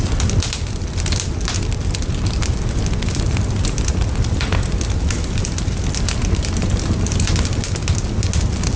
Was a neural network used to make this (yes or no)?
no